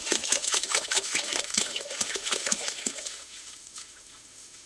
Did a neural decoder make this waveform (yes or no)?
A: yes